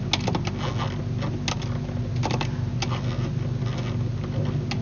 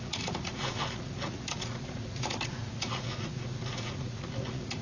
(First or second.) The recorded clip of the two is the first